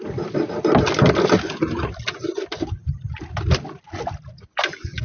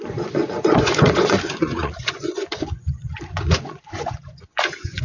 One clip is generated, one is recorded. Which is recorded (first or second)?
first